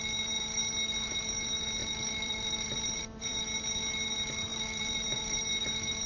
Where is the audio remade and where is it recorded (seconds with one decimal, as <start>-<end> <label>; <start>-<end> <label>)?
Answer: 0.0-1.8 recorded; 1.8-3.4 remade; 3.4-4.5 recorded; 4.5-5.4 remade; 5.4-6.1 recorded